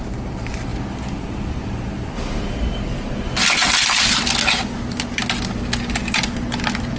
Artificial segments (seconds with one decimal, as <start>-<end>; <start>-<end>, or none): none